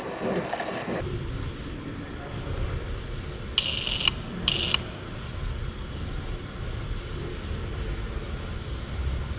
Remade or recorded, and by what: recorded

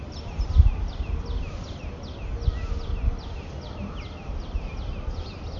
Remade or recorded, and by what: recorded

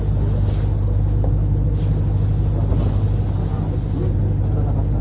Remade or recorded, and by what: recorded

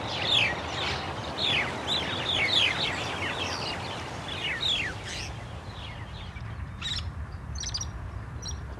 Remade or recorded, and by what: recorded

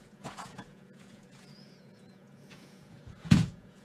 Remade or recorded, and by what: remade, vocoder, Vocos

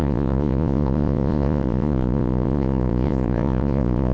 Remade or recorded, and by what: remade, vocoder, Vocos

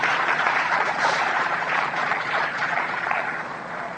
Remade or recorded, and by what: remade, vocoder, Vocos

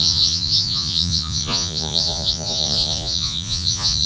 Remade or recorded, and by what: remade, vocoder, Vocos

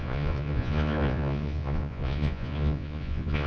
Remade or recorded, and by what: remade, vocoder, Vocos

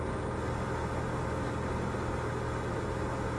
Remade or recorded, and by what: recorded